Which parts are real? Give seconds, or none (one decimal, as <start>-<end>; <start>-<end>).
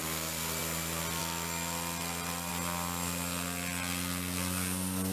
0.0-5.1